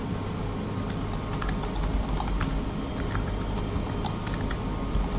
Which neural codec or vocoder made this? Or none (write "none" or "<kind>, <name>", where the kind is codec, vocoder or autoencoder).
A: none